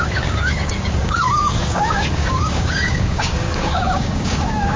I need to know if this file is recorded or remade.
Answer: remade